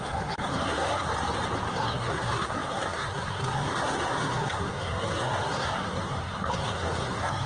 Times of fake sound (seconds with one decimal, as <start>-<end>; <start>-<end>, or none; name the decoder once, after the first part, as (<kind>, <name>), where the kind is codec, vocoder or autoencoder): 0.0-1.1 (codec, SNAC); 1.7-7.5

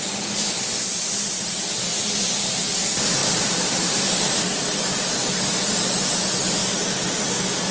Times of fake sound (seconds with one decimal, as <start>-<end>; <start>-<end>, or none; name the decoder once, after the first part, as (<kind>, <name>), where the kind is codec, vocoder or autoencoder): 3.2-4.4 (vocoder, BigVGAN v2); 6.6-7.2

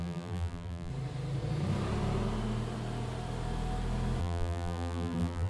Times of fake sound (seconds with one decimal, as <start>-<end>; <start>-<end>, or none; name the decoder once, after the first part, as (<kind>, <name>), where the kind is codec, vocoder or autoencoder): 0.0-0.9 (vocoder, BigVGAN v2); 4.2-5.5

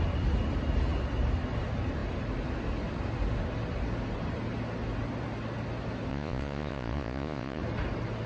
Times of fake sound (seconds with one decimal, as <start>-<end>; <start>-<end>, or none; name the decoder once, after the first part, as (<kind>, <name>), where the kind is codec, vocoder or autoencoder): 6.1-7.6 (vocoder, Vocos)